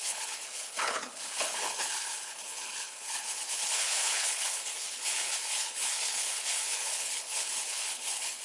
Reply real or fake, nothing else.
fake